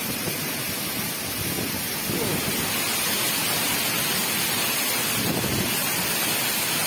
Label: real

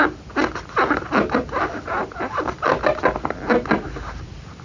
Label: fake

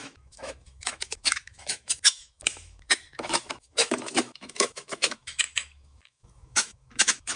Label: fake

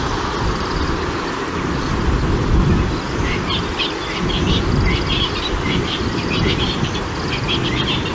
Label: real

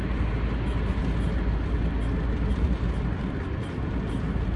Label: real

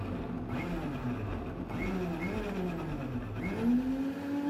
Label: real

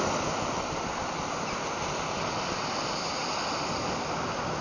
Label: real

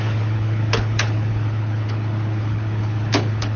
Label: fake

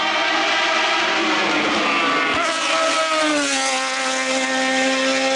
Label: real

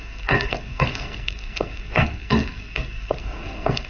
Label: fake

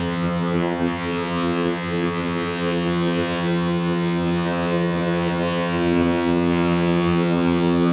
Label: fake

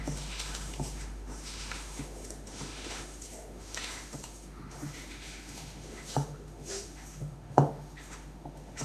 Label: fake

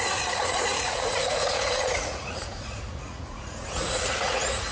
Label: fake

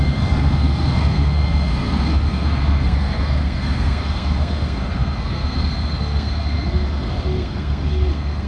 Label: fake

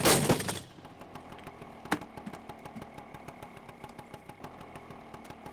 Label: real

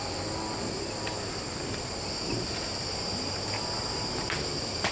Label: real